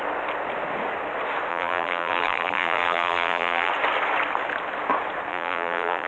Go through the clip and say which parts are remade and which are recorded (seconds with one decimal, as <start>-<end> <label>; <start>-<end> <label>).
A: 0.0-1.5 recorded; 1.5-3.7 remade; 3.7-5.3 recorded; 5.3-6.1 remade